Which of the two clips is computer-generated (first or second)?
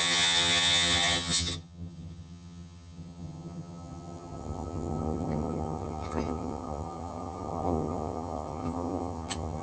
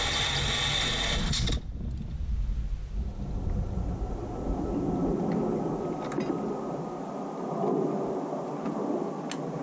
first